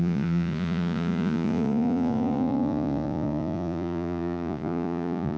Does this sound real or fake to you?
fake